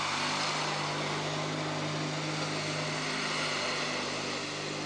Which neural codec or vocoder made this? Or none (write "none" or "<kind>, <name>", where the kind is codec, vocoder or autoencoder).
none